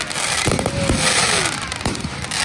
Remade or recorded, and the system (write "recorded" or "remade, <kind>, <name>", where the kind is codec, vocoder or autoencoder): recorded